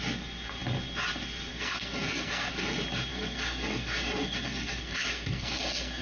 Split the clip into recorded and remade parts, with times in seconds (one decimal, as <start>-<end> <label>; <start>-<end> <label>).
0.0-1.5 recorded; 1.5-2.5 remade; 2.5-3.1 recorded; 3.1-6.0 remade